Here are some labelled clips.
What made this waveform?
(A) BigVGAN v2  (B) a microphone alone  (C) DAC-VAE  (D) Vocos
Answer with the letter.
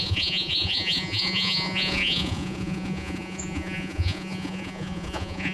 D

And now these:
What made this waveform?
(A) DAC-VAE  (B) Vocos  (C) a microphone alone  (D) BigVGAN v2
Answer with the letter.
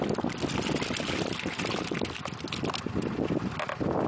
C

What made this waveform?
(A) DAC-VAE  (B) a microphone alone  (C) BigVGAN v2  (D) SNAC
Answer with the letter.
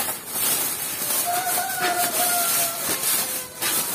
C